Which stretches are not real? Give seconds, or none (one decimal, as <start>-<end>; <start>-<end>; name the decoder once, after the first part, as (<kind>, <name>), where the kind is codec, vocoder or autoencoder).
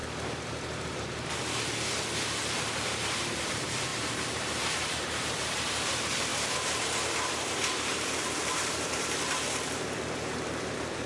3.0-6.3 (vocoder, BigVGAN v2); 7.5-11.1